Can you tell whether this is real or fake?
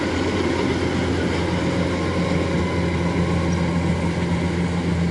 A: real